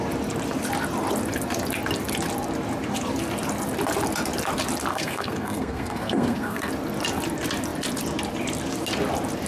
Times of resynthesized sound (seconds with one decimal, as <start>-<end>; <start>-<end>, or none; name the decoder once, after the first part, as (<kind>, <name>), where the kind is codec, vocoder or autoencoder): 4.9-6.7 (codec, SNAC)